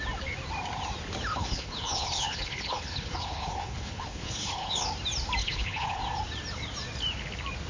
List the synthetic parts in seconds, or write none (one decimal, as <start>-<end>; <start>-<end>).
1.3-4.9; 5.4-6.0